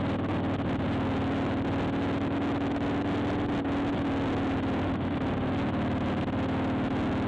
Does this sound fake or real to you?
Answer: real